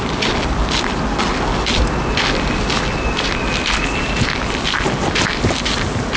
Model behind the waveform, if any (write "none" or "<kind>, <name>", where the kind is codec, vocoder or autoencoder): none